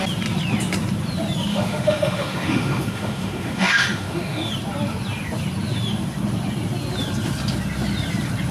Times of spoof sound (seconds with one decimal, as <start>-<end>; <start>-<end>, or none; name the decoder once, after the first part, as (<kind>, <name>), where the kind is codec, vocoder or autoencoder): 1.5-4.5 (autoencoder, DAC-VAE)